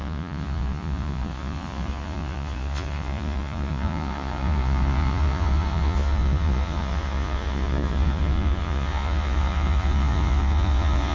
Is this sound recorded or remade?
remade